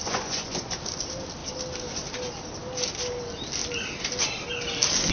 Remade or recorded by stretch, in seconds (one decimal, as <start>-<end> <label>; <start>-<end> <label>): 0.0-0.7 remade; 0.7-5.1 recorded